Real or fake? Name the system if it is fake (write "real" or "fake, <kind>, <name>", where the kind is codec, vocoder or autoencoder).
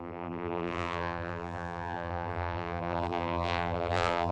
fake, vocoder, BigVGAN v2